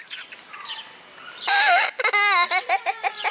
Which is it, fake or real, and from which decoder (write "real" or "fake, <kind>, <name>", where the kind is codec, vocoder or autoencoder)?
real